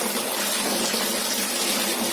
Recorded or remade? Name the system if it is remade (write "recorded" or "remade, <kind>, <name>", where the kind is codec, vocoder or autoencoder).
recorded